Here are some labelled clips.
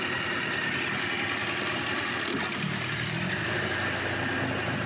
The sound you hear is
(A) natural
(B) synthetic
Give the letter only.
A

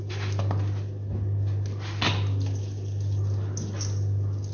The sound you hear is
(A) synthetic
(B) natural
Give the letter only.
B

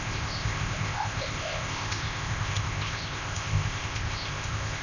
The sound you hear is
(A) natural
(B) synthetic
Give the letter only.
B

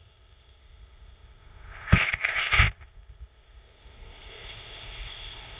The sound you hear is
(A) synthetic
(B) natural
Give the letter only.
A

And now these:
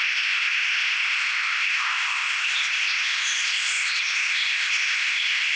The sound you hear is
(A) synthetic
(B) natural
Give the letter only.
A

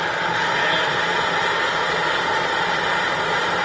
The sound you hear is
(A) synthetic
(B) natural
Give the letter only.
B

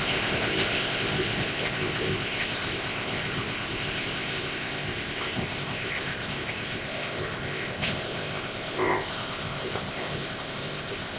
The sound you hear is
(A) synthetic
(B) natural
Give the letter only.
A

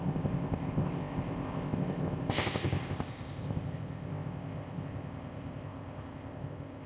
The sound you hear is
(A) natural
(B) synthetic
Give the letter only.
B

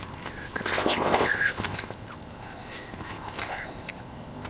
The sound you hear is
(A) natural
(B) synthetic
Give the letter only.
B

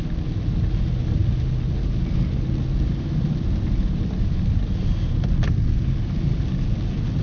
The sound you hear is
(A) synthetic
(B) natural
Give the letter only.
B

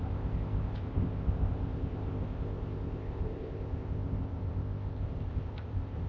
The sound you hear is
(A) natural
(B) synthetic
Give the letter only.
B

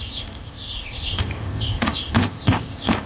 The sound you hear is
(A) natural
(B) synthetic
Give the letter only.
B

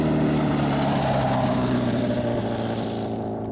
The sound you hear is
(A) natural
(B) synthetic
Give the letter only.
A